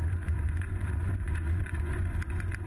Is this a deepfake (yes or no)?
yes